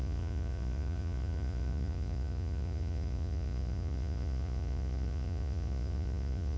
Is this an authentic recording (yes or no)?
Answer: no